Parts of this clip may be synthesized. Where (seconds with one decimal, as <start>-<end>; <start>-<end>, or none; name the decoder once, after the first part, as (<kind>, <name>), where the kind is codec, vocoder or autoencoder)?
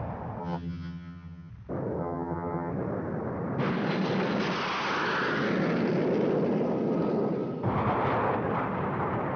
0.4-1.5 (vocoder, HiFi-GAN); 2.0-2.7